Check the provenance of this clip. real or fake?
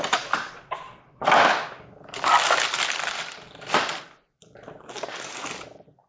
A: real